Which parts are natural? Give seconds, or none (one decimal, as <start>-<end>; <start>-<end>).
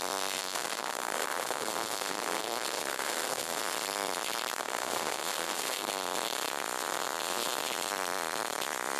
0.0-0.4; 3.6-4.6; 5.9-9.0